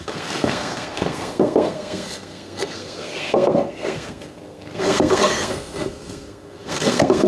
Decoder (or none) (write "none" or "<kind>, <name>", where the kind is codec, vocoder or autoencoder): codec, SNAC